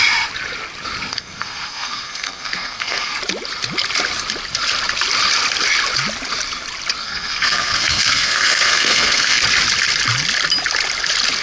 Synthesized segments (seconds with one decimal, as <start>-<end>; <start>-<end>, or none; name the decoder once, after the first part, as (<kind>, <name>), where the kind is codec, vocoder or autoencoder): 1.1-3.1 (codec, SNAC); 7.0-9.4